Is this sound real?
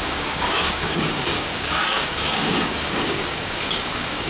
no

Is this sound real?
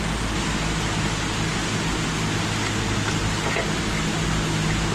yes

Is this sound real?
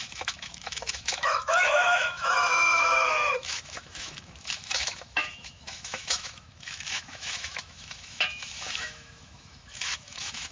no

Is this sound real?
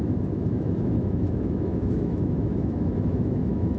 no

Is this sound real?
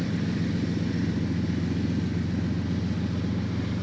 yes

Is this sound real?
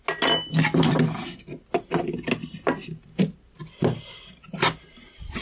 yes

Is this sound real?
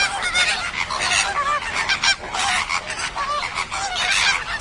yes